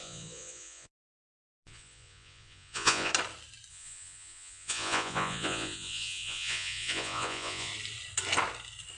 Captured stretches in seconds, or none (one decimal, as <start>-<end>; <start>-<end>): 3.1-3.7; 7.7-9.0